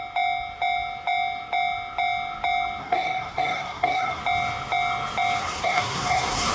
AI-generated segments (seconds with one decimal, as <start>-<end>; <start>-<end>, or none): 2.8-4.2; 5.4-6.5